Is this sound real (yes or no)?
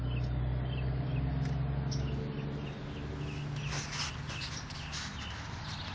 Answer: yes